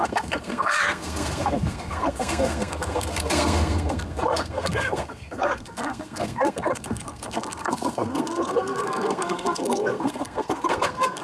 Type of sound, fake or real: fake